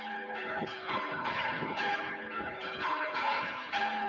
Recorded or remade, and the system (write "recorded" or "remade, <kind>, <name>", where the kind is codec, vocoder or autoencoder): remade, codec, HILCodec